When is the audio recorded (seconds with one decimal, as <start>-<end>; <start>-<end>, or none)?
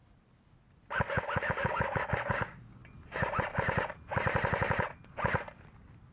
0.0-1.4; 2.8-6.1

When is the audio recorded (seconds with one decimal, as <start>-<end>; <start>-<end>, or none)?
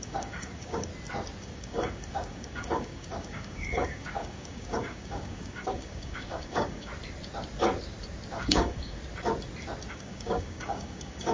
0.9-1.4; 6.9-8.4; 9.0-9.9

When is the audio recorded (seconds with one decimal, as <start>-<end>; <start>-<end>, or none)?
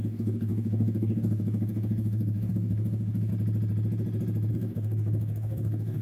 3.3-4.5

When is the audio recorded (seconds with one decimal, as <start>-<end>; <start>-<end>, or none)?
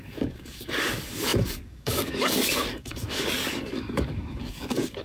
none